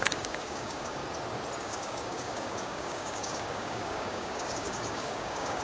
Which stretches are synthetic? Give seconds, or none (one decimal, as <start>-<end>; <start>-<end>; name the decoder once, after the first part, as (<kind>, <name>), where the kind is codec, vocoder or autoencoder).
0.0-1.0 (codec, DAC); 1.6-5.6